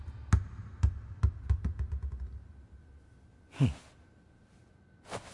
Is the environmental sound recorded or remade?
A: recorded